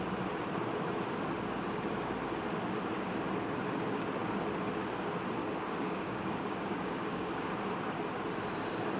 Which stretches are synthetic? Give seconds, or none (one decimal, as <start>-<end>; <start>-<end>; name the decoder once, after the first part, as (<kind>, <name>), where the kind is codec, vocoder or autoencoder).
5.4-7.5 (codec, DAC)